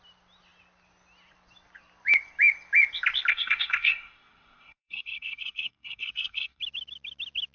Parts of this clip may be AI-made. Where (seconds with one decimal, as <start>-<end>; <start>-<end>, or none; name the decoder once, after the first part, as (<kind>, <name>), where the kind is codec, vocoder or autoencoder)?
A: 3.3-6.6 (codec, SNAC)